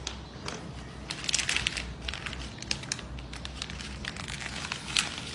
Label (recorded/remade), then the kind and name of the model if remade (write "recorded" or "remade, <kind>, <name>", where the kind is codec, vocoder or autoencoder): recorded